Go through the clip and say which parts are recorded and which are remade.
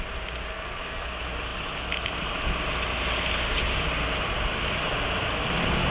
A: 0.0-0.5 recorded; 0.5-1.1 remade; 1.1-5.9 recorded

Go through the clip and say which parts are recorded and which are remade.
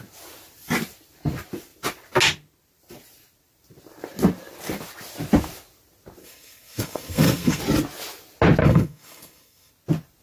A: 0.0-6.2 recorded; 6.2-7.6 remade; 7.6-8.6 recorded; 8.6-9.7 remade; 9.7-10.2 recorded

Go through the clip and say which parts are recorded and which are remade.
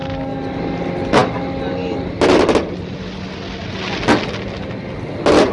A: 0.0-5.5 recorded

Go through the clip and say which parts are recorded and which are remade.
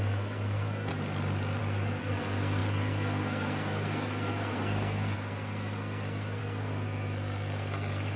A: 0.0-0.9 remade; 0.9-1.6 recorded; 1.6-8.2 remade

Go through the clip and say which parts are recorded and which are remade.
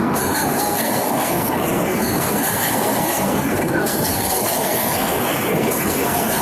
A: 0.0-6.4 remade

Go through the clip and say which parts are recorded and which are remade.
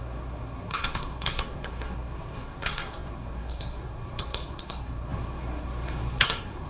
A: 0.0-6.7 remade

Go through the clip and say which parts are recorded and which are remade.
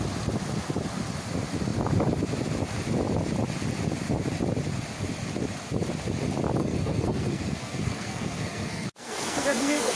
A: 0.0-6.6 recorded; 6.6-9.9 remade